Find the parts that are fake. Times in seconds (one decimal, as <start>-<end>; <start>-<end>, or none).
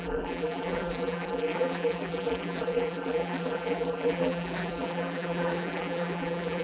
0.0-6.6